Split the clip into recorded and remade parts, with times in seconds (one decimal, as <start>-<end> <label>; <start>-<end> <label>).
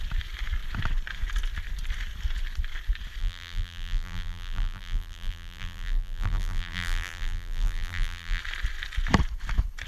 0.0-3.2 recorded; 3.2-8.4 remade; 8.4-9.9 recorded